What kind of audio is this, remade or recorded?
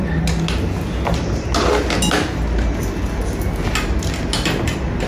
recorded